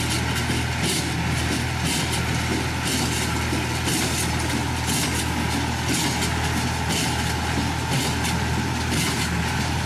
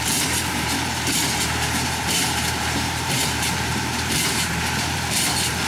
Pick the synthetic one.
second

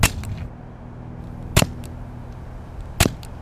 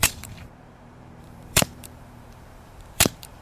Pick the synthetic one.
second